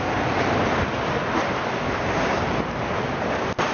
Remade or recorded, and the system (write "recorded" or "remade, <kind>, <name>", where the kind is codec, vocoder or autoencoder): recorded